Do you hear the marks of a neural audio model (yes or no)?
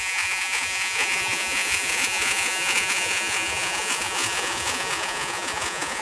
yes